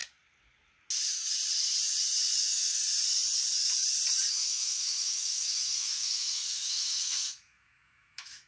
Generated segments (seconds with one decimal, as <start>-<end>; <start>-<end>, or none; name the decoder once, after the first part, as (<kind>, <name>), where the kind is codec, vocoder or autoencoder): 2.4-2.8 (autoencoder, DAC-VAE); 4.3-8.5

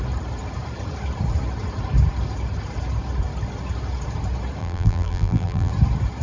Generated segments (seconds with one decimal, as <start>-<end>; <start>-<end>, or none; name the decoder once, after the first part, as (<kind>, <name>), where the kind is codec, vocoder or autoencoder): 4.6-5.7 (vocoder, BigVGAN v2)

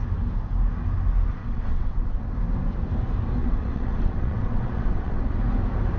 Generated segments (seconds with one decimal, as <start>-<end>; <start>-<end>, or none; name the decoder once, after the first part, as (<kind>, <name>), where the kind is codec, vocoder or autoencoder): 1.4-2.3 (vocoder, WaveNeXt); 3.4-5.4

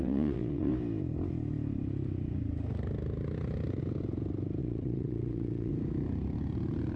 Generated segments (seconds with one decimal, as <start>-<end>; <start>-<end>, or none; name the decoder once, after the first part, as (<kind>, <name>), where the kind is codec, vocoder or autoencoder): 0.0-0.7 (vocoder, WaveNeXt); 4.6-5.7

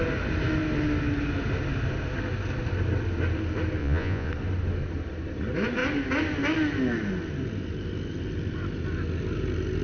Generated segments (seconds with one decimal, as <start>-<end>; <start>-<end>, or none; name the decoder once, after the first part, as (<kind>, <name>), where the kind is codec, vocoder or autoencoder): 3.8-4.3 (vocoder, Vocos)